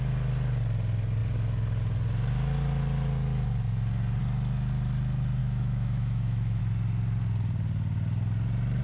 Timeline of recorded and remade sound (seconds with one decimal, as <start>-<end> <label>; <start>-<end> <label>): 0.0-5.4 recorded; 5.4-6.6 remade; 6.6-8.8 recorded

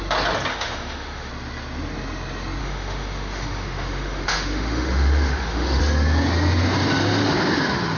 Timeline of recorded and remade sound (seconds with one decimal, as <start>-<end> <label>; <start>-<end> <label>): 0.0-0.5 recorded; 0.5-1.3 remade; 1.3-2.6 recorded; 2.6-5.8 remade; 5.8-8.0 recorded

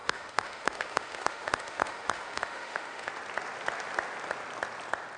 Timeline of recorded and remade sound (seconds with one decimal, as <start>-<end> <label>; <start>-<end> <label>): 0.0-3.1 remade; 3.1-5.2 recorded

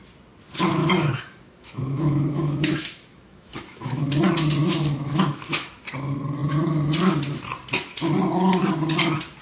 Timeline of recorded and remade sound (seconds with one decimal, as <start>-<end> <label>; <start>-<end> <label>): 0.0-0.8 recorded; 0.8-4.0 remade; 4.0-4.6 recorded; 4.6-5.8 remade; 5.8-9.4 recorded

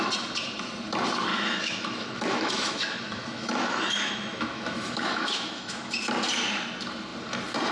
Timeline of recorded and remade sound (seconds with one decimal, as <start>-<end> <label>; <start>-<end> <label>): 0.0-1.3 recorded; 1.3-5.9 remade; 5.9-7.7 recorded

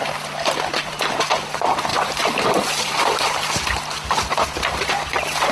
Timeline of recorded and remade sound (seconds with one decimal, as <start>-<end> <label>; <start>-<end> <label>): 0.0-5.5 recorded

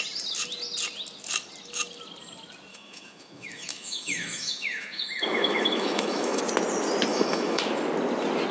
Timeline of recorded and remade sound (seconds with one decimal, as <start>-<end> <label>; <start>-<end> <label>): 0.0-2.7 recorded; 2.7-6.4 remade; 6.4-7.1 recorded; 7.1-7.6 remade; 7.6-8.5 recorded

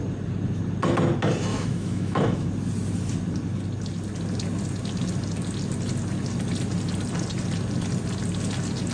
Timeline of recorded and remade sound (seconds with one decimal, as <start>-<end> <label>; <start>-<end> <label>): 0.0-1.5 recorded; 1.5-2.5 remade; 2.5-8.9 recorded